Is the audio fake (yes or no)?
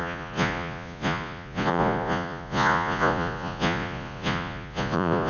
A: yes